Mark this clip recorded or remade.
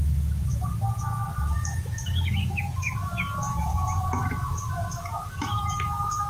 remade